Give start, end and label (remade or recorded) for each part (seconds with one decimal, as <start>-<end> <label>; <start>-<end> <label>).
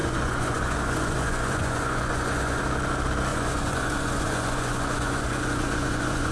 0.0-2.6 remade; 2.6-3.3 recorded; 3.3-6.3 remade